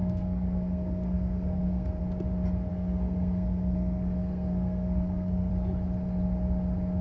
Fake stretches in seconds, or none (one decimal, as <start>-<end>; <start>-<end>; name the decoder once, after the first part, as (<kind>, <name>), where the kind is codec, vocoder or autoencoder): 0.0-2.0 (codec, SNAC); 2.7-5.5